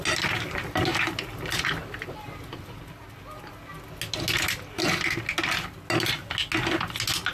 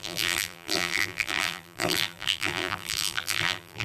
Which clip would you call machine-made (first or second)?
second